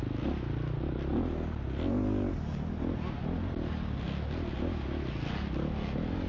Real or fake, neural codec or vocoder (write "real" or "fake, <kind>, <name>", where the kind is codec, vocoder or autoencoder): real